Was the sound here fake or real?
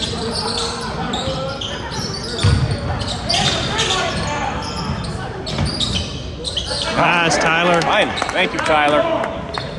real